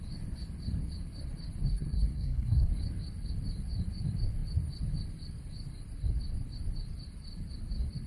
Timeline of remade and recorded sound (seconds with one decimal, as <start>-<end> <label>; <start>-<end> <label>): 0.0-1.7 recorded; 1.7-2.7 remade; 2.7-8.1 recorded